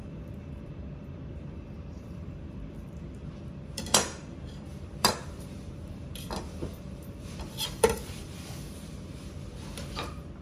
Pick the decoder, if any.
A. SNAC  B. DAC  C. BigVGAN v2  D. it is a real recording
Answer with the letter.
C